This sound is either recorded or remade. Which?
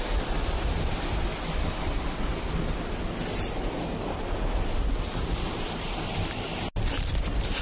recorded